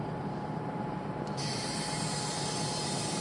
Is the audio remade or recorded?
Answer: remade